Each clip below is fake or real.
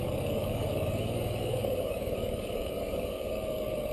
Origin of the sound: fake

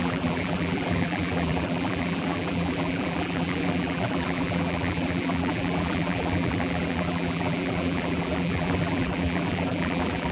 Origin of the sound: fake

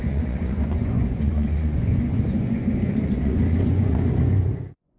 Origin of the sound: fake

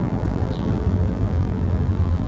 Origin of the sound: fake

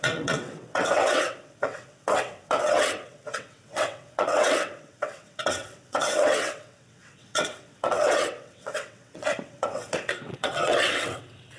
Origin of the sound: fake